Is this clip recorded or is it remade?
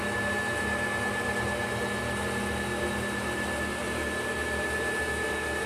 recorded